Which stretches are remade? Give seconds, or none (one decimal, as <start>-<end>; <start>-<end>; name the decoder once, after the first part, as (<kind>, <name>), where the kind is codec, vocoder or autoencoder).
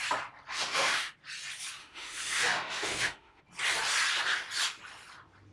0.5-1.1 (autoencoder, DAC-VAE); 1.8-3.4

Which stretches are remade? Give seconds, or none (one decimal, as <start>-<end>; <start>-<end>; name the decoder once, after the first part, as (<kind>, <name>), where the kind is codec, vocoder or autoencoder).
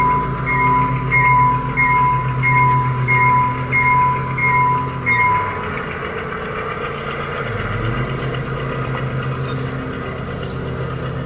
none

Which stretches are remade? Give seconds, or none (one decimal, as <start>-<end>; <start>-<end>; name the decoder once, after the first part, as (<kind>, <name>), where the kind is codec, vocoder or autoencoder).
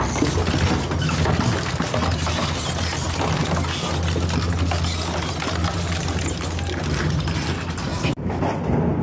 7.9-8.4 (autoencoder, DAC-VAE)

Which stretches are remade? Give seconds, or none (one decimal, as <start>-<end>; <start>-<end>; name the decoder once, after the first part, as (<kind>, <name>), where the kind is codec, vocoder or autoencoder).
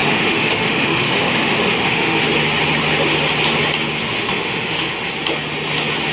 0.0-2.2 (autoencoder, DAC-VAE); 4.0-5.1